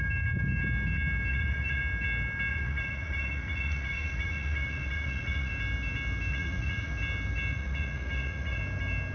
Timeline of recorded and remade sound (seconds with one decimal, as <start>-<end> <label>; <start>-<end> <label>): 0.0-1.3 recorded; 1.3-1.8 remade; 1.8-2.5 recorded; 2.5-5.5 remade; 5.5-6.3 recorded; 6.3-6.9 remade; 6.9-7.5 recorded; 7.5-8.6 remade; 8.6-9.1 recorded